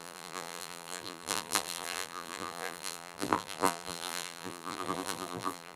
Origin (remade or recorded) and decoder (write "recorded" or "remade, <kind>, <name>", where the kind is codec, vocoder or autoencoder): remade, vocoder, BigVGAN v2